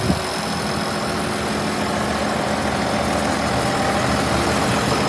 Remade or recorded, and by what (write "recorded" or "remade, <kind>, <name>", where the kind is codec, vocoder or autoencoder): recorded